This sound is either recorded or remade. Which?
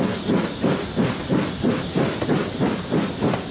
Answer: recorded